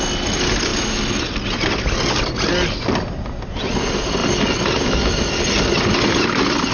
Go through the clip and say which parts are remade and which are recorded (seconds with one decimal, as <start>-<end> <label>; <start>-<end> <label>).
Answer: 0.0-6.7 recorded